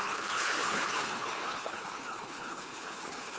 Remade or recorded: remade